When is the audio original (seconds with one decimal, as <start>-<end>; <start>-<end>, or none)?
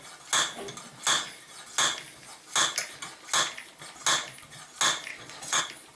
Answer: 0.0-5.1; 5.6-6.0